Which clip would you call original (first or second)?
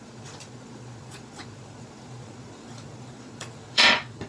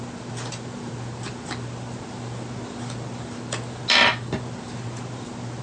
second